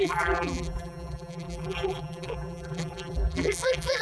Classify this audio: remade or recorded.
remade